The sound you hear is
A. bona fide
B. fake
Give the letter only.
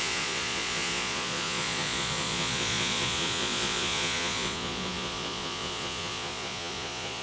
B